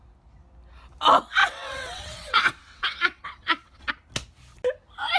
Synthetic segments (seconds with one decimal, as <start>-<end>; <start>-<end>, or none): 1.4-3.9